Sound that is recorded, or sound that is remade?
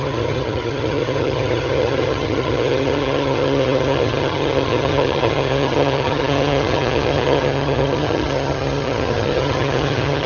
remade